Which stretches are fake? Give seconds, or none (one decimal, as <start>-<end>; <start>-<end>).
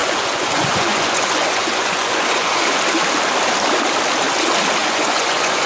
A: 0.0-2.8; 4.8-5.7